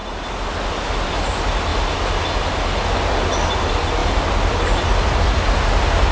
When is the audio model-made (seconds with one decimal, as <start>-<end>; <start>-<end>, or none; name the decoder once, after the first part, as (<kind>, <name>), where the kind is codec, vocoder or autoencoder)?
none